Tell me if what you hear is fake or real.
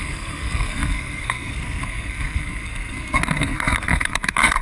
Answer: fake